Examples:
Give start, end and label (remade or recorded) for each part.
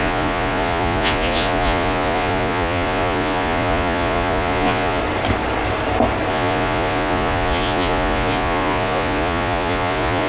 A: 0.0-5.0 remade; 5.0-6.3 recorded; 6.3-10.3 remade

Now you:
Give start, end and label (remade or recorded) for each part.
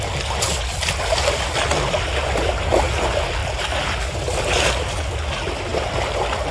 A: 0.0-6.5 recorded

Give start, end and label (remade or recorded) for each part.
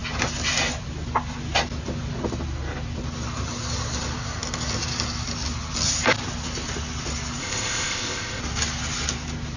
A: 0.0-7.4 recorded; 7.4-8.4 remade; 8.4-9.6 recorded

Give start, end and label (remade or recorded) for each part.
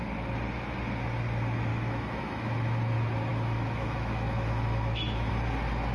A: 0.0-1.7 recorded; 1.7-2.5 remade; 2.5-3.3 recorded; 3.3-5.3 remade; 5.3-5.9 recorded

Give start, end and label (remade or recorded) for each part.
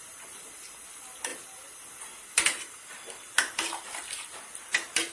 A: 0.0-5.1 recorded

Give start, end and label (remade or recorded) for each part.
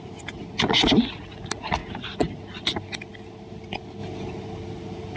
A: 0.0-5.2 recorded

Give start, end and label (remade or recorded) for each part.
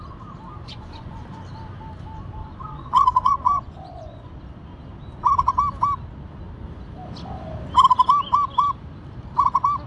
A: 0.0-0.6 recorded; 0.6-1.4 remade; 1.4-2.4 recorded; 2.4-4.3 remade; 4.3-9.9 recorded